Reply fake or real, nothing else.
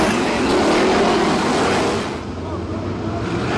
real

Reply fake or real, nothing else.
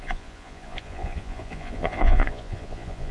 fake